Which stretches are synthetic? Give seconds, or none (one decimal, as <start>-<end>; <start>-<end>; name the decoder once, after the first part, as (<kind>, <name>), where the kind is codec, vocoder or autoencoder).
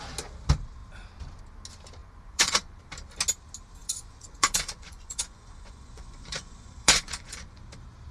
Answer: 2.0-2.8 (vocoder, Vocos); 3.8-7.6